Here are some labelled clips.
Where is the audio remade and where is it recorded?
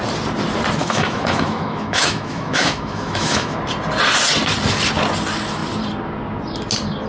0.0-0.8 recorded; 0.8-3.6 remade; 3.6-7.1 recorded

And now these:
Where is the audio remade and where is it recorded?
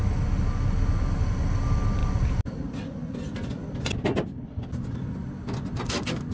0.0-6.3 recorded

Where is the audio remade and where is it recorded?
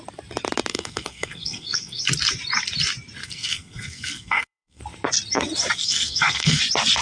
0.0-0.7 recorded; 0.7-2.0 remade; 2.0-3.2 recorded; 3.2-4.8 remade; 4.8-5.8 recorded; 5.8-6.6 remade; 6.6-7.0 recorded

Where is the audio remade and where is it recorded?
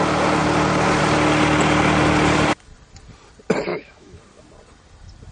0.0-3.7 recorded; 3.7-4.2 remade; 4.2-5.3 recorded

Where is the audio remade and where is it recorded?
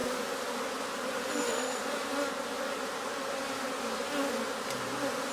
0.0-1.3 recorded; 1.3-1.8 remade; 1.8-5.3 recorded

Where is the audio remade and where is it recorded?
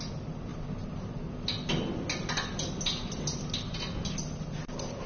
0.0-5.1 recorded